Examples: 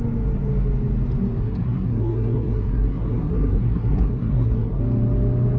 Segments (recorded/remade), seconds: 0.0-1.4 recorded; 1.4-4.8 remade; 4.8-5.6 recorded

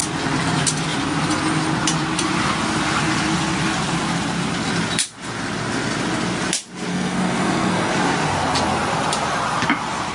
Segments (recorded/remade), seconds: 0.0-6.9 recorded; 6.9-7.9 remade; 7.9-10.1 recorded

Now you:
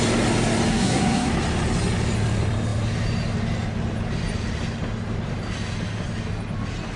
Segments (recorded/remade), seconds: 0.0-0.7 recorded; 0.7-1.3 remade; 1.3-7.0 recorded